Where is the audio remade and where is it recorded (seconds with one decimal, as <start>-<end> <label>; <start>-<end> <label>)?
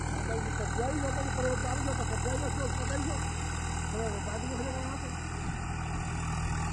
0.0-6.7 recorded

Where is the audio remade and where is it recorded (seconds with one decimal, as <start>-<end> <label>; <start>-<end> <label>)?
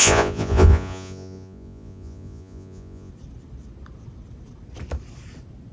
0.0-3.1 remade; 3.1-5.7 recorded